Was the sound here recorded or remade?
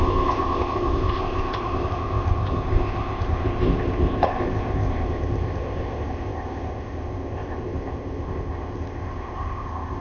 remade